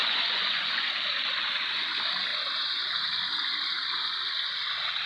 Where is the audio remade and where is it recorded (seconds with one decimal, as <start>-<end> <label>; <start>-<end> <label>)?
0.0-0.9 remade; 0.9-5.1 recorded